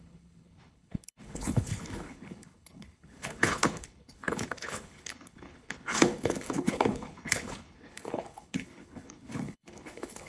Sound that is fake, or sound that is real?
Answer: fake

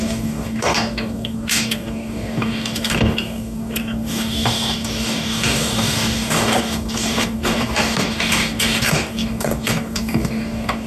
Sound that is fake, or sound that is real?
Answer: fake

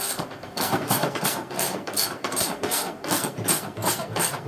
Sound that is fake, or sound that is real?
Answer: fake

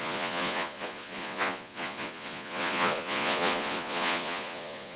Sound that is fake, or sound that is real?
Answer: fake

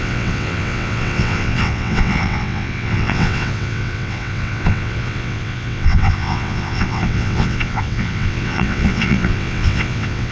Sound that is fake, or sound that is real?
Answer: fake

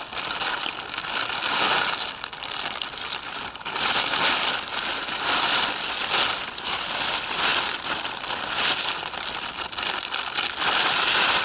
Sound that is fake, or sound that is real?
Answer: real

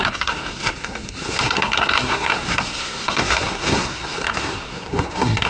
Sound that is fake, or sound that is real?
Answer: fake